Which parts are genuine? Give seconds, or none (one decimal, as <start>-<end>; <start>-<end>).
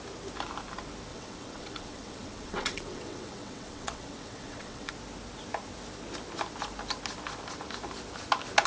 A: 0.0-1.1; 4.9-8.7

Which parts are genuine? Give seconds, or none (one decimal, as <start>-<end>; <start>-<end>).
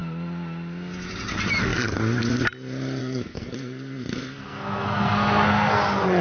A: 0.0-3.0; 5.8-6.2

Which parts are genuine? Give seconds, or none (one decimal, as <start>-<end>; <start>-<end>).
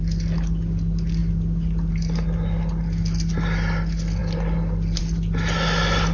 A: 0.0-6.1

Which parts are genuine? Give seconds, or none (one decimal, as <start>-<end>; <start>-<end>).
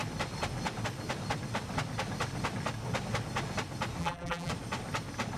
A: 0.0-4.0; 4.5-5.4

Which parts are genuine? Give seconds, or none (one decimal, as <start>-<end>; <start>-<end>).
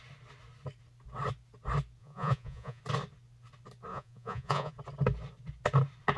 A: 0.0-2.0; 2.8-3.9; 4.7-6.2